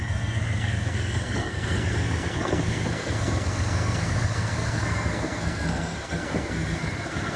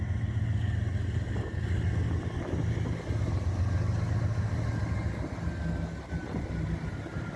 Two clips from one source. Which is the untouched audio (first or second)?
second